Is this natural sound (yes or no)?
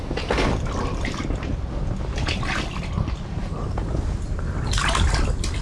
yes